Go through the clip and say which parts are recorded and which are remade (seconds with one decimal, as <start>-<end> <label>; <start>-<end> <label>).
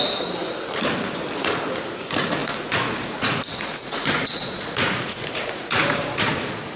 0.0-2.4 recorded; 2.4-6.3 remade; 6.3-6.8 recorded